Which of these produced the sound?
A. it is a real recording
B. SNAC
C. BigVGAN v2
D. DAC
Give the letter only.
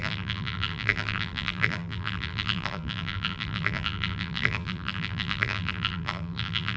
C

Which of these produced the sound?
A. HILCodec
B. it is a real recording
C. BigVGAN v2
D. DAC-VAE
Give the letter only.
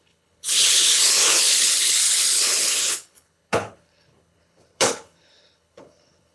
A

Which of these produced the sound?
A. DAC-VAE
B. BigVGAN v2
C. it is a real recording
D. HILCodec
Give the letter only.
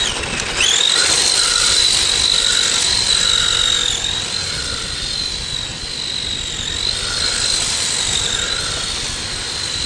C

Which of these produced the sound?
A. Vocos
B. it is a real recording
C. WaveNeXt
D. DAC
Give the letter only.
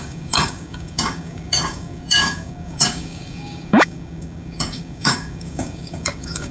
D